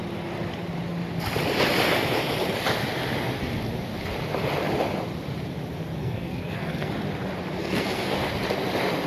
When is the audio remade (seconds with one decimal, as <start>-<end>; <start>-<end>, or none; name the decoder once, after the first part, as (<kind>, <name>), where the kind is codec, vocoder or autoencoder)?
6.0-6.9 (codec, SNAC); 7.6-8.1